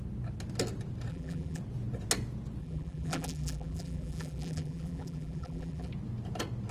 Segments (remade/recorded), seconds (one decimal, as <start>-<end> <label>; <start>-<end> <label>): 0.0-1.1 recorded; 1.1-1.6 remade; 1.6-2.6 recorded; 2.6-5.9 remade; 5.9-6.7 recorded